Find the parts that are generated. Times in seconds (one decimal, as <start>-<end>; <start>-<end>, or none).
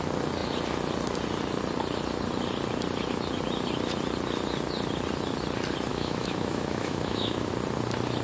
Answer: 5.9-7.5